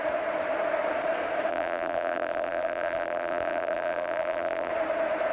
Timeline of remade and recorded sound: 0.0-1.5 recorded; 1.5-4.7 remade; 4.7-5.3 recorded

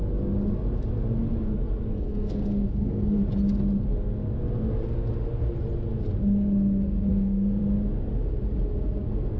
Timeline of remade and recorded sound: 0.0-1.9 recorded; 1.9-3.2 remade; 3.2-7.1 recorded; 7.1-7.6 remade; 7.6-9.4 recorded

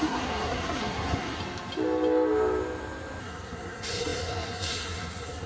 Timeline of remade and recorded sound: 0.0-1.4 remade; 1.4-3.2 recorded; 3.2-5.5 remade

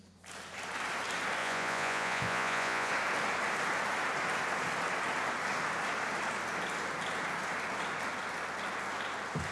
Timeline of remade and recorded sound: 0.0-1.4 recorded; 1.4-2.9 remade; 2.9-9.5 recorded

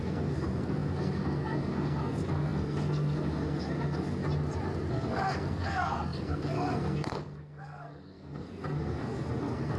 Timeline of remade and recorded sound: 0.0-4.2 remade; 4.2-4.9 recorded; 4.9-9.8 remade

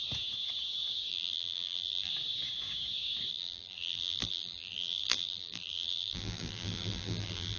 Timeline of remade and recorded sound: 0.0-1.1 recorded; 1.1-2.1 remade; 2.1-3.3 recorded; 3.3-7.6 remade

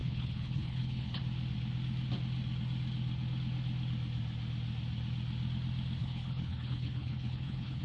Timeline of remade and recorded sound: 0.0-1.2 remade; 1.2-6.0 recorded; 6.0-7.8 remade

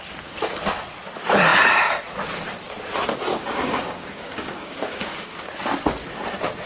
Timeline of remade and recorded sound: 0.0-3.3 recorded; 3.3-5.5 remade; 5.5-6.7 recorded